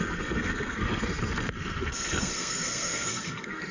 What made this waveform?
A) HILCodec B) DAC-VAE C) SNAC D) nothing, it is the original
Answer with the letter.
C